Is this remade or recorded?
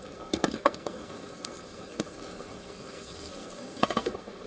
remade